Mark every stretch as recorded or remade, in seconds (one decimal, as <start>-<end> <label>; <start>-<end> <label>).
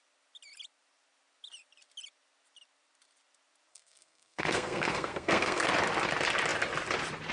0.0-3.7 recorded; 3.7-5.7 remade; 5.7-7.3 recorded